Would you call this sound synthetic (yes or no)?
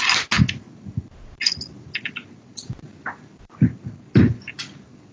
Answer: no